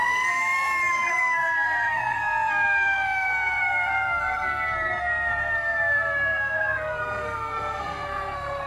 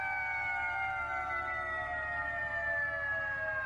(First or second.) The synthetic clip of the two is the first